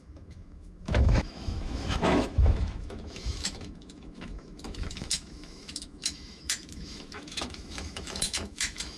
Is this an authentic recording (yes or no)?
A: no